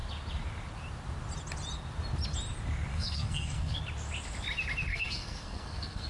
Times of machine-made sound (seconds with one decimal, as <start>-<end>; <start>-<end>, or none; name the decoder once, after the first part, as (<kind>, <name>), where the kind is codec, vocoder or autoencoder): 2.9-3.8 (codec, SNAC); 4.9-6.1